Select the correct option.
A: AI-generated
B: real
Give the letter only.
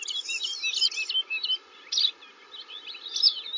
B